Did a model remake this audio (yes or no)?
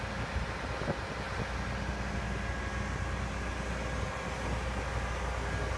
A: no